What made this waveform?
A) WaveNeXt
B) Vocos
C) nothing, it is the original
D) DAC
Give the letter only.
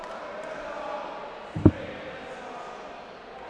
C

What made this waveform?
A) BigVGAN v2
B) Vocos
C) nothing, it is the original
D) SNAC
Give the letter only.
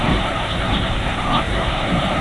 D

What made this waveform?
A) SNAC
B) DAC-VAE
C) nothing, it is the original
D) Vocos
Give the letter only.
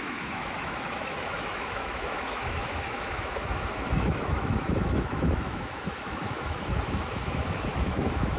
B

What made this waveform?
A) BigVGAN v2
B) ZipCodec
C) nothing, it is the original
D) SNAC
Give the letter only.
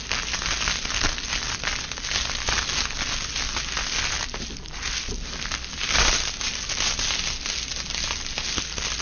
C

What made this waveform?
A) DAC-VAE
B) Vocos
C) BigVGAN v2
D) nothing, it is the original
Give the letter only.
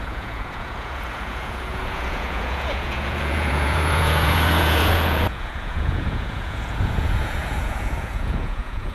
B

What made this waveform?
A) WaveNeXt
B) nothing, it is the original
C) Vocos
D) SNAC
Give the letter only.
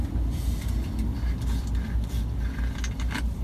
B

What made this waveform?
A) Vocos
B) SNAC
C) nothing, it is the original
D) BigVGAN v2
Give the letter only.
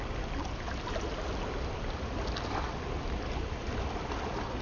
C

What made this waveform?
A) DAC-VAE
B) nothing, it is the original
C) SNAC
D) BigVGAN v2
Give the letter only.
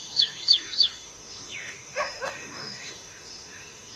A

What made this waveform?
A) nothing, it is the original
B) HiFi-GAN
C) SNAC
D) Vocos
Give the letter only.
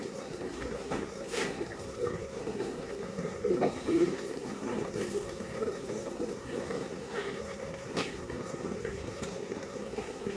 C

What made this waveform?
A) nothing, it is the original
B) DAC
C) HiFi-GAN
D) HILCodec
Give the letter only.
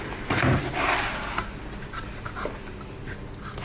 A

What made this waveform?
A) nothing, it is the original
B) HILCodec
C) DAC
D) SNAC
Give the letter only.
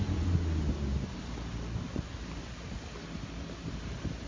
A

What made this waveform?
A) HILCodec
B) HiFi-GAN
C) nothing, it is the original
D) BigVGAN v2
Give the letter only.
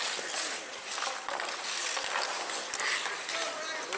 C